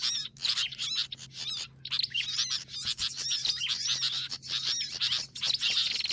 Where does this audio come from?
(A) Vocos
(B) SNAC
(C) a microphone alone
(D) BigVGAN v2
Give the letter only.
C